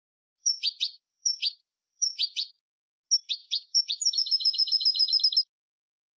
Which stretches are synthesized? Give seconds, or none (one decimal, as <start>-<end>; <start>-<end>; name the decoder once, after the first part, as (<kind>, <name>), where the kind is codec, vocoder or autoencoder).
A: 0.4-2.5 (vocoder, Vocos); 3.4-5.2